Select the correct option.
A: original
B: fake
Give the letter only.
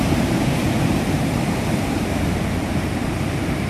B